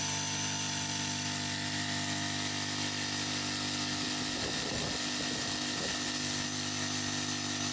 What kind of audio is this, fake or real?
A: real